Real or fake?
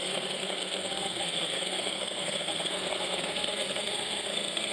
fake